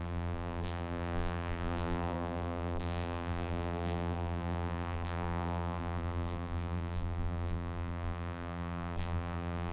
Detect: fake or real fake